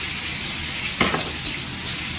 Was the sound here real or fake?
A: real